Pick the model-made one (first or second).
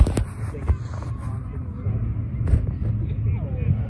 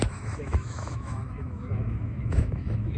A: second